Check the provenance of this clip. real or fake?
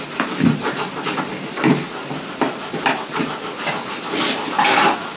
real